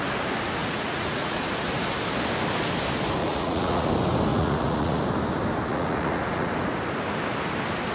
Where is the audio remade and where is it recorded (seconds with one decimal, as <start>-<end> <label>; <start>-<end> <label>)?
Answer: 0.0-0.6 recorded; 0.6-1.4 remade; 1.4-3.2 recorded; 3.2-3.9 remade; 3.9-4.3 recorded; 4.3-5.0 remade; 5.0-5.7 recorded; 5.7-6.5 remade; 6.5-7.9 recorded